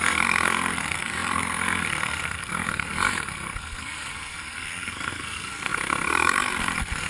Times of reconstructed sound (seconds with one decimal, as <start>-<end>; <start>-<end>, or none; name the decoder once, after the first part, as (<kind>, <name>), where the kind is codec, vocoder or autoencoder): 0.0-7.1 (codec, SNAC)